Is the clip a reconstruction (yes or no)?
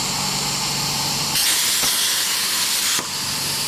no